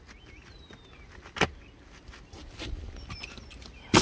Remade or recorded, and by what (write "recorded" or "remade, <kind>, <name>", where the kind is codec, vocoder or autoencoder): recorded